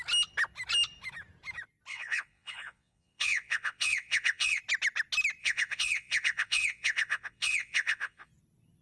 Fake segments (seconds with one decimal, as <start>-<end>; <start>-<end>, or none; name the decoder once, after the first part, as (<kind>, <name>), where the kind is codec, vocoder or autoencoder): 1.9-4.6 (vocoder, Vocos); 5.4-8.3